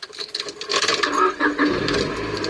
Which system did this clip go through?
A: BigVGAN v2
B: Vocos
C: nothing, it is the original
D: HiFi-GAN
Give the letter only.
C